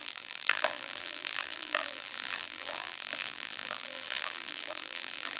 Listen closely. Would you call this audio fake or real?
fake